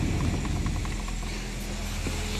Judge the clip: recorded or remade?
recorded